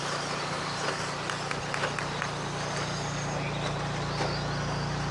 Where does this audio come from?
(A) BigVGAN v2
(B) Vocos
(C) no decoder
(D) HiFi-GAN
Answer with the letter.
C